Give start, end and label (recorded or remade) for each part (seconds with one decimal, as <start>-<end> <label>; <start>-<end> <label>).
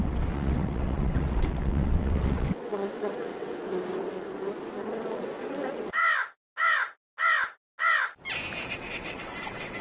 0.0-3.6 remade; 3.6-4.8 recorded; 4.8-6.0 remade; 6.0-8.7 recorded; 8.7-9.8 remade